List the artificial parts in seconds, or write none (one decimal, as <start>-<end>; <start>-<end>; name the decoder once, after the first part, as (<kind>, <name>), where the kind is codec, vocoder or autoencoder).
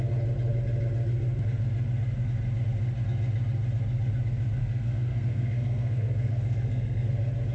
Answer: 4.6-7.1 (codec, SNAC)